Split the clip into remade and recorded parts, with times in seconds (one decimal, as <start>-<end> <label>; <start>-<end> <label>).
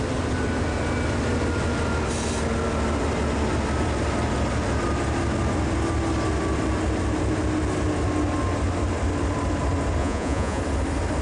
0.0-10.0 recorded; 10.0-10.6 remade; 10.6-11.2 recorded